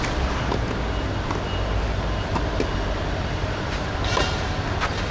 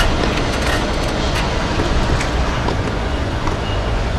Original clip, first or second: first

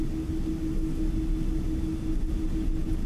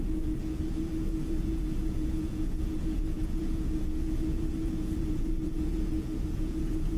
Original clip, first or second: first